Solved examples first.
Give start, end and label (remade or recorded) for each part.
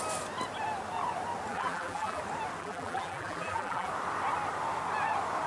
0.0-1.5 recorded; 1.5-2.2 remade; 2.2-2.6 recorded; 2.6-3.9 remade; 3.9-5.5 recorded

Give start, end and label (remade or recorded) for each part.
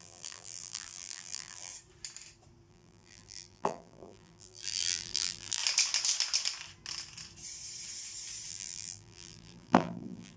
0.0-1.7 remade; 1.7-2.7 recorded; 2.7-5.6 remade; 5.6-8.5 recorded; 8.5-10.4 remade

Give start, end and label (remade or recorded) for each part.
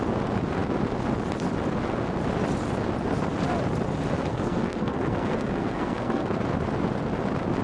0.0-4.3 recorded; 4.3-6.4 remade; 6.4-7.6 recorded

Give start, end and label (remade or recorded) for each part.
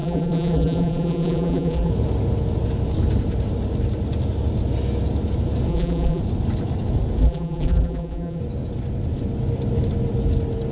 0.0-1.9 remade; 1.9-5.7 recorded; 5.7-6.2 remade; 6.2-7.2 recorded; 7.2-8.4 remade; 8.4-10.7 recorded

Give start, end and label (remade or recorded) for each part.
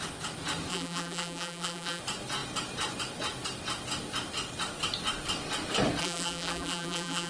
0.0-0.7 recorded; 0.7-2.0 remade; 2.0-6.0 recorded; 6.0-7.3 remade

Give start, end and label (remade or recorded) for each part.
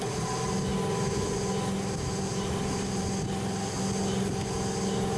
0.0-5.2 recorded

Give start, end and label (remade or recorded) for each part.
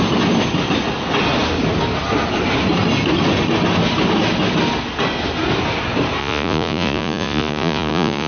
0.0-6.2 recorded; 6.2-8.3 remade